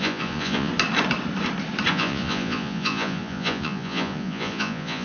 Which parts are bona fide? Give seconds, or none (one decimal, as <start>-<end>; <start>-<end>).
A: 0.7-1.9